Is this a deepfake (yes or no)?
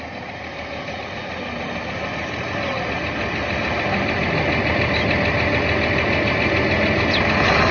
no